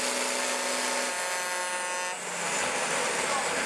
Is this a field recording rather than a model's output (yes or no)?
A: yes